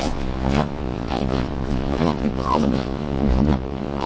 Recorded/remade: remade